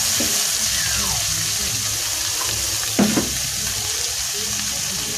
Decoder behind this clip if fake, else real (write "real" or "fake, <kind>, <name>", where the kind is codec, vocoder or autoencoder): real